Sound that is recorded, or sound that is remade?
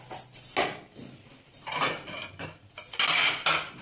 recorded